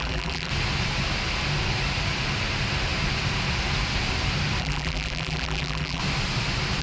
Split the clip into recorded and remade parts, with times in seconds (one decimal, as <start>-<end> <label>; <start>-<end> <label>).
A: 0.0-0.5 remade; 0.5-4.6 recorded; 4.6-6.0 remade; 6.0-6.8 recorded